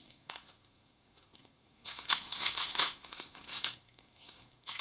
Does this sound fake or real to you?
fake